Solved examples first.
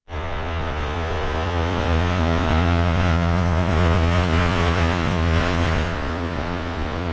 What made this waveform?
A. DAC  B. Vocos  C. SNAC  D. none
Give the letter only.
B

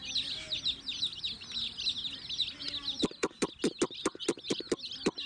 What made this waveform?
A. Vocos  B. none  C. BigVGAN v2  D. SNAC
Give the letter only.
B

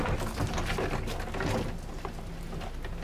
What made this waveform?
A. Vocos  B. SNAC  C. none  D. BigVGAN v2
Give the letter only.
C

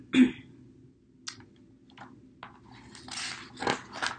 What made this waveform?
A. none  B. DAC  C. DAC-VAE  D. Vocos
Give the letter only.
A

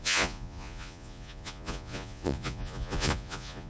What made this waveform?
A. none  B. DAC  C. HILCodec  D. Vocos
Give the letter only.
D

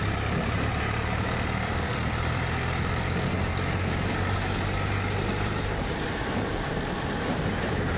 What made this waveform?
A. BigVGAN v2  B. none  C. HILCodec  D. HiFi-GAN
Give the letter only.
A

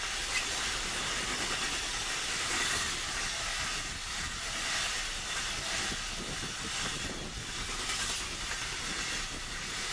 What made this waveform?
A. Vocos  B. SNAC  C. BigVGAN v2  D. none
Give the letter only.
D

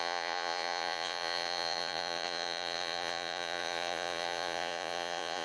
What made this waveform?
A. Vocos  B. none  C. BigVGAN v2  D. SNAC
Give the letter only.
A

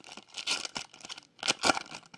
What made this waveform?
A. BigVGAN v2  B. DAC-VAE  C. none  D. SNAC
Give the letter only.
C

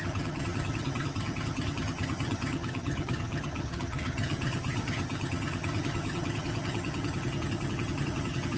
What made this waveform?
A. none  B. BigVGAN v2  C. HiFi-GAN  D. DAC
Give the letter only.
C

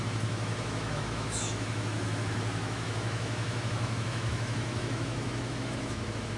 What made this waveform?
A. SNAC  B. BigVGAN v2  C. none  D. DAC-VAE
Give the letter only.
D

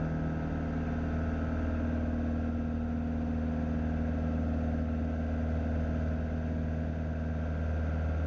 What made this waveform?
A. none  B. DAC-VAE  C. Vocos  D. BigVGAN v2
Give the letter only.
A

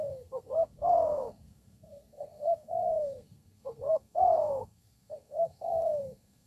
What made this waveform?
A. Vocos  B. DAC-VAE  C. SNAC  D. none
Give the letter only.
C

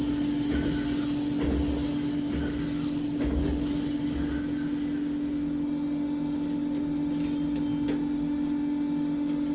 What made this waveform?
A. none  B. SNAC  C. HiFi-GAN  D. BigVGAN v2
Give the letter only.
A